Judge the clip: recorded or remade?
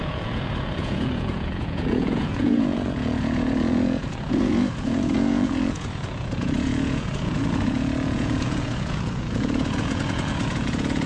remade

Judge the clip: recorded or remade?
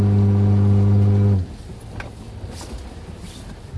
recorded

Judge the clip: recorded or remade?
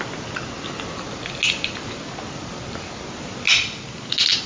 recorded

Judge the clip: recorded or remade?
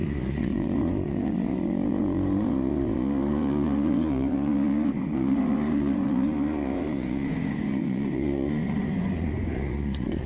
remade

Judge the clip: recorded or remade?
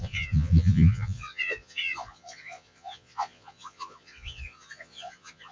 remade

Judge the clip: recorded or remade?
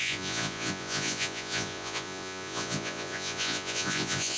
remade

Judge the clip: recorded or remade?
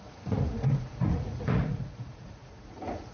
remade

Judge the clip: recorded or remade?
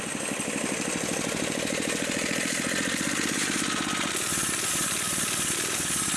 recorded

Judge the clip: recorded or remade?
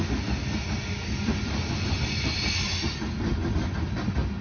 recorded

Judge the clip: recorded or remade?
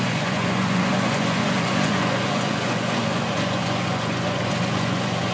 remade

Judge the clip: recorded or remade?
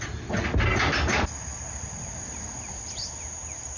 recorded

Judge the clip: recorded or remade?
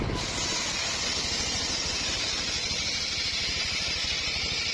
recorded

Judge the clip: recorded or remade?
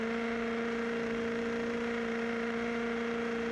recorded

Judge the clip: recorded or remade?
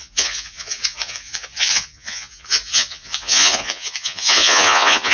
remade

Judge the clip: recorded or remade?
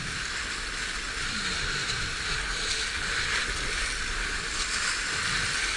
recorded